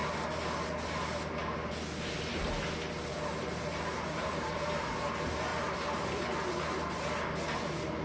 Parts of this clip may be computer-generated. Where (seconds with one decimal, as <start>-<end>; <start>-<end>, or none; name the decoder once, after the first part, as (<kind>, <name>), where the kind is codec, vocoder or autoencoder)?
3.1-4.9 (vocoder, BigVGAN v2); 5.5-6.3

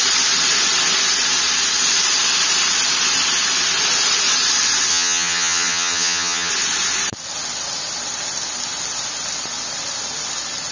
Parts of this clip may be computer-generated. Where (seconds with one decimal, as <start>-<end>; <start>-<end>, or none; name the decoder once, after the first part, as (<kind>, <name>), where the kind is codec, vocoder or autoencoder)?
4.9-6.5 (vocoder, HiFi-GAN)

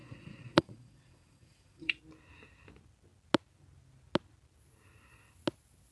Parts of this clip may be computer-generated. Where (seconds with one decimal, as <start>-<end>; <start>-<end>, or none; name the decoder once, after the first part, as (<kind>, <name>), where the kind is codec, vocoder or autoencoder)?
0.0-2.0 (vocoder, Vocos)

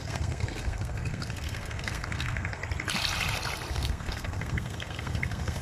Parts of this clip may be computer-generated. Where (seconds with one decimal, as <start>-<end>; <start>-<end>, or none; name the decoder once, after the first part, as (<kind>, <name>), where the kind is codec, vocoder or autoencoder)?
0.0-2.6 (codec, SNAC); 3.7-5.6